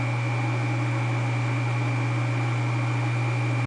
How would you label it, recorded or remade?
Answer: recorded